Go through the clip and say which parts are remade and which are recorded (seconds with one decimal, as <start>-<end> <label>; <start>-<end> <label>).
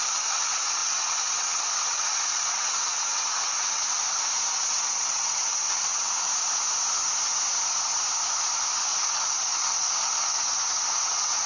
0.0-4.0 remade; 4.0-4.5 recorded; 4.5-6.3 remade; 6.3-9.0 recorded; 9.0-11.5 remade